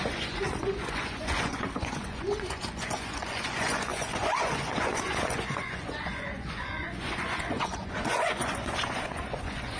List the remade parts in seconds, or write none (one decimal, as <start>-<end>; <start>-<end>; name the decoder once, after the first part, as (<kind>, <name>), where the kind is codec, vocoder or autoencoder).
0.0-9.8 (vocoder, Vocos)